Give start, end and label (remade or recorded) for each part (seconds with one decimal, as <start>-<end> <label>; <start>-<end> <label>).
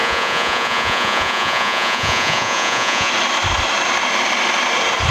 0.0-3.1 remade; 3.1-5.1 recorded